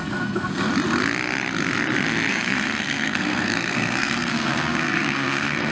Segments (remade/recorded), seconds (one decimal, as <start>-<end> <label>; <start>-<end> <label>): 0.0-0.7 remade; 0.7-2.3 recorded; 2.3-5.7 remade